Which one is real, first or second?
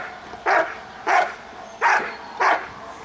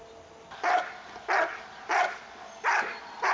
first